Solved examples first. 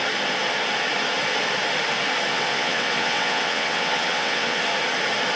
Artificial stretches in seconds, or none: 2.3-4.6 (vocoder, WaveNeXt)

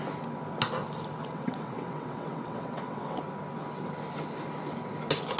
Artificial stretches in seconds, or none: 1.2-3.2 (vocoder, WaveNeXt)

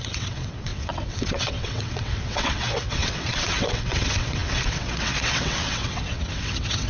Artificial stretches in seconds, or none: 0.0-6.9 (vocoder, WaveNeXt)